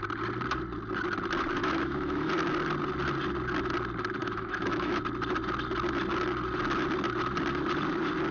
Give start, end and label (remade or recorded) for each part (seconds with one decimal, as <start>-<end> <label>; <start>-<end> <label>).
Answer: 0.0-1.6 recorded; 1.6-2.3 remade; 2.3-4.2 recorded; 4.2-5.0 remade; 5.0-8.3 recorded